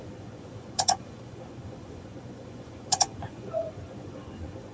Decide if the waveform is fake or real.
fake